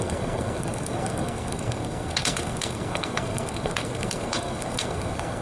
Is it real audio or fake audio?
fake